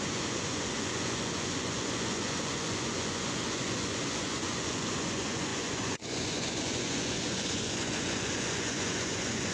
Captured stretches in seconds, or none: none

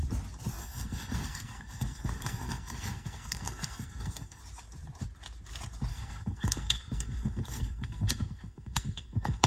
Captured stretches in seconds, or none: 0.0-0.6; 4.4-5.9

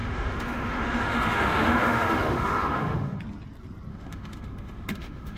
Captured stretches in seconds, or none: 3.2-3.9

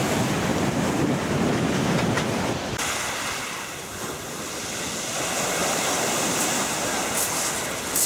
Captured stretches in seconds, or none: 0.0-0.5; 1.7-5.6; 7.0-8.1

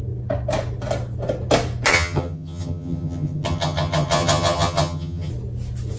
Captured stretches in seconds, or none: 0.0-1.9; 5.3-6.0

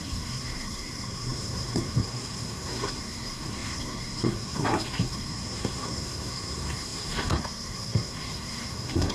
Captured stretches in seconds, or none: none

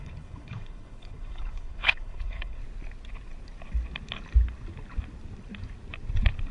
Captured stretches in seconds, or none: 2.6-6.5

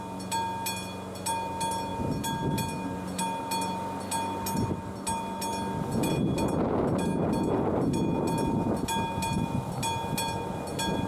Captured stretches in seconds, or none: 0.0-11.1